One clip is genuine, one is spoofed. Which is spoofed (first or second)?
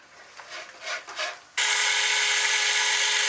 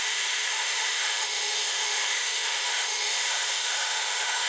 second